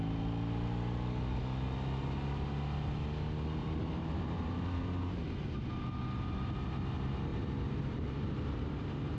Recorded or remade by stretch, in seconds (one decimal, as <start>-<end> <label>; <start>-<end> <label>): 0.0-3.6 recorded; 3.6-5.0 remade; 5.0-7.3 recorded; 7.3-9.2 remade